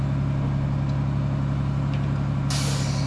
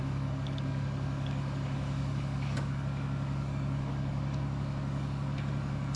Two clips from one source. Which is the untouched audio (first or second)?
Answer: first